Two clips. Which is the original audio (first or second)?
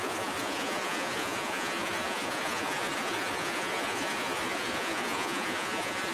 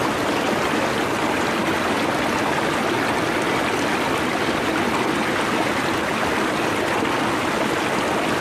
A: second